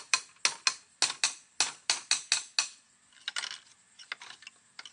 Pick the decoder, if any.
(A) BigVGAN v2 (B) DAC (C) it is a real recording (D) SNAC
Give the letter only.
C